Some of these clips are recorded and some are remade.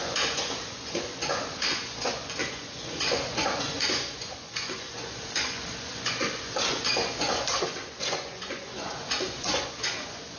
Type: remade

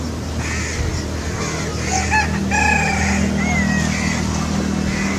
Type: recorded